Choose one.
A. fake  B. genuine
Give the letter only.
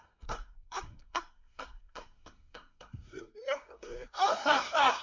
A